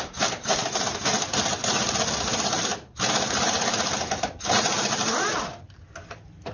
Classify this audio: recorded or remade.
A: remade